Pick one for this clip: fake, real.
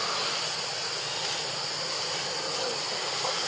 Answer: real